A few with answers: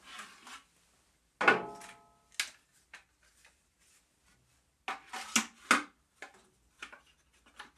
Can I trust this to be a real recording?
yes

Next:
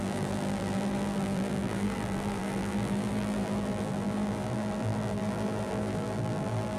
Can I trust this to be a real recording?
no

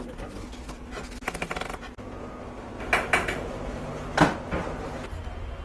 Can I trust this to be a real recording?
yes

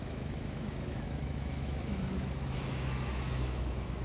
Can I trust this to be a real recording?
no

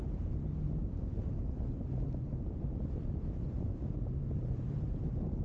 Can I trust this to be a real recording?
yes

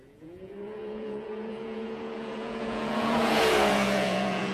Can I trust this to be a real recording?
no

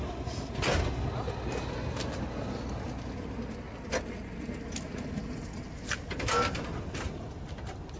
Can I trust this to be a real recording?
yes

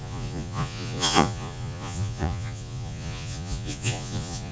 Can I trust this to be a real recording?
no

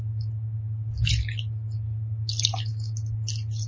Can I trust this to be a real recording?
yes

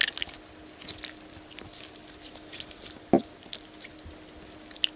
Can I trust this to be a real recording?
yes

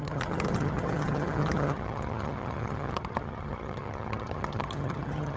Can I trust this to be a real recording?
no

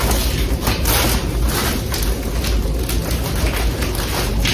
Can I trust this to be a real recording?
yes